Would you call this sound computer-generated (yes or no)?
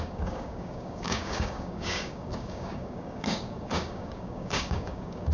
yes